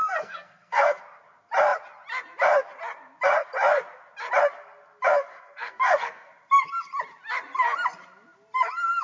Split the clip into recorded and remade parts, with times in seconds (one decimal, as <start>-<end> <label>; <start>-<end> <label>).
0.0-1.0 remade; 1.0-5.3 recorded; 5.3-6.3 remade; 6.3-9.0 recorded